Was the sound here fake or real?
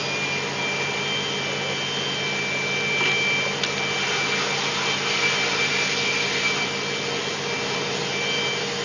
real